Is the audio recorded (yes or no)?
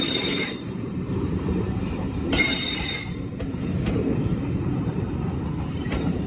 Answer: no